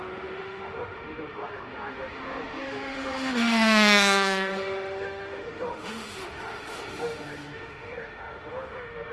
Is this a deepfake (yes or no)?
yes